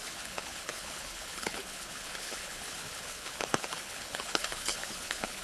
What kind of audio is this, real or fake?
fake